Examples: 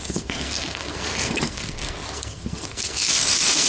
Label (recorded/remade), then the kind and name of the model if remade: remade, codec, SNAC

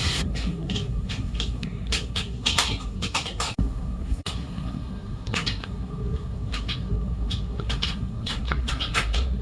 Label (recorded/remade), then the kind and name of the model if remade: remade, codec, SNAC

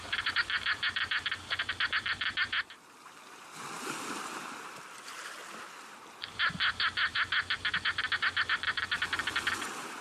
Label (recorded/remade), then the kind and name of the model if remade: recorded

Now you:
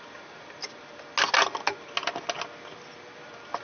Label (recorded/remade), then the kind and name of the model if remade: recorded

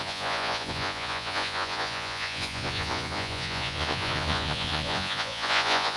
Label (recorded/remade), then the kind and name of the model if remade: remade, vocoder, Vocos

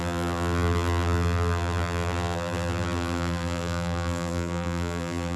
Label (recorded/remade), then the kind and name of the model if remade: remade, vocoder, BigVGAN v2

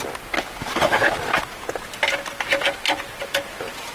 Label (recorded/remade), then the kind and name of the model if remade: recorded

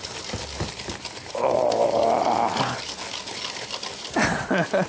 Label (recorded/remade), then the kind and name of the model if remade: recorded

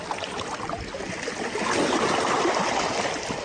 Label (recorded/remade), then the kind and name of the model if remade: recorded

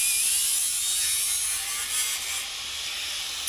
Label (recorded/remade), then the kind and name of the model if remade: recorded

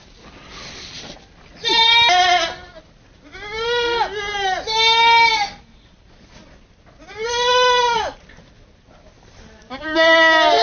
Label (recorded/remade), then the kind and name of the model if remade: recorded